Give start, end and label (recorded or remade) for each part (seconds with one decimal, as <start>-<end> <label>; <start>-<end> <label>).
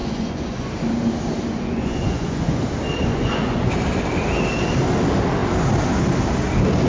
0.0-0.7 remade; 0.7-1.5 recorded; 1.5-2.6 remade; 2.6-3.1 recorded; 3.1-3.7 remade; 3.7-6.9 recorded